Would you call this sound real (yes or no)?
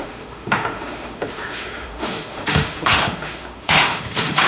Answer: no